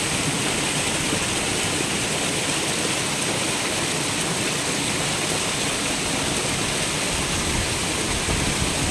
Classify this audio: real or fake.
real